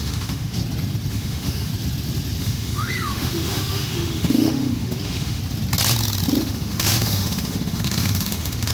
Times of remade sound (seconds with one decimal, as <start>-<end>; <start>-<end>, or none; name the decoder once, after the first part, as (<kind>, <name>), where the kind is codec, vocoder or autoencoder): 0.0-0.6 (autoencoder, DAC-VAE); 1.1-1.7; 2.4-5.4; 6.4-8.7